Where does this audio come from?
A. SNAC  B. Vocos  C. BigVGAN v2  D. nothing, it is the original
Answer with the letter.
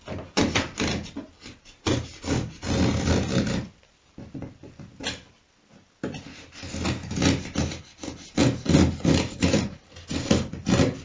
D